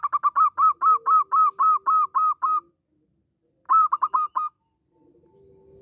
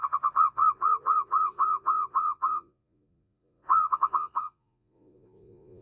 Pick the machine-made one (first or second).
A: second